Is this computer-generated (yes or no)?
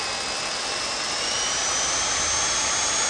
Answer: no